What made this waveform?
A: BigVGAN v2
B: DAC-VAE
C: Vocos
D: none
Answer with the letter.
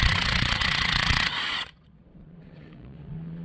C